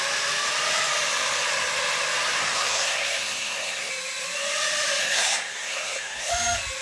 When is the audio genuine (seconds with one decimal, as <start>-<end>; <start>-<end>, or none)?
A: 0.0-2.4; 3.9-5.0; 6.3-6.8